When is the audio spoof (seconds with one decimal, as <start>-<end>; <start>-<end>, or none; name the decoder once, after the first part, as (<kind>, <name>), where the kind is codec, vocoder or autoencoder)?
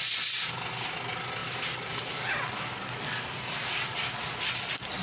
none